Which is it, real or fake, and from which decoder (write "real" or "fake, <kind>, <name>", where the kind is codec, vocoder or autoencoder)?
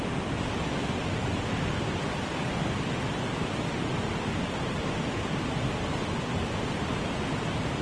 real